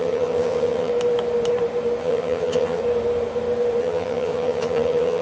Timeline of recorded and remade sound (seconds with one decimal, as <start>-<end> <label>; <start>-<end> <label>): 0.0-0.9 remade; 0.9-2.0 recorded; 2.0-2.8 remade; 2.8-3.8 recorded; 3.8-5.2 remade